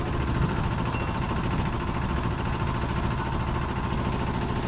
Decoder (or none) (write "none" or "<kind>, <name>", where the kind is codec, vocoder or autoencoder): none